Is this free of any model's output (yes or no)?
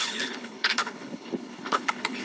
no